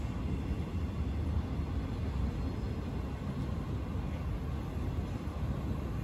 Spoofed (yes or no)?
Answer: no